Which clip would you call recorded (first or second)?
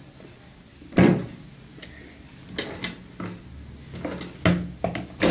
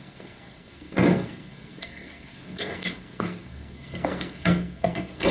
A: first